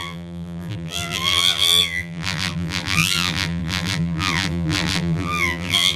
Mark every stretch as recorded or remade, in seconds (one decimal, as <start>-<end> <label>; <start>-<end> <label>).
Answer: 0.0-6.0 remade